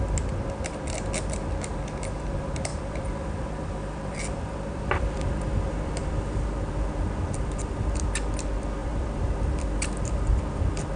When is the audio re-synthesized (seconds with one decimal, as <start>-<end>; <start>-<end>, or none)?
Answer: 2.7-7.9; 8.8-11.0